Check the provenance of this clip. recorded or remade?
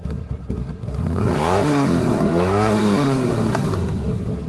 remade